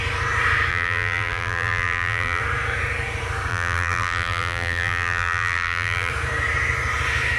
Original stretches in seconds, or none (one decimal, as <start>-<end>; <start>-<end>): 0.0-0.7; 2.4-3.5; 6.1-7.4